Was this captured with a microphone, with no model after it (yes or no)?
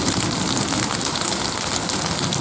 yes